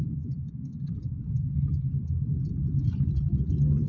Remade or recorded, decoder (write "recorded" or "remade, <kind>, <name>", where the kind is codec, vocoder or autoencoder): remade, vocoder, BigVGAN v2